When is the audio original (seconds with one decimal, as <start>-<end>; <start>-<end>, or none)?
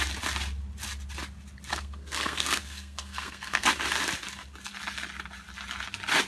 0.0-1.7; 3.7-6.3